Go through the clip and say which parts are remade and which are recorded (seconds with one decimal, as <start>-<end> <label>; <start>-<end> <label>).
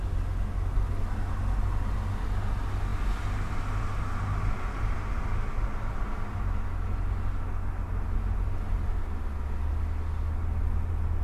0.0-11.2 recorded